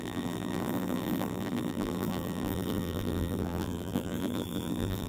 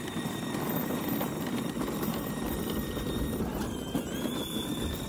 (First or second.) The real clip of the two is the second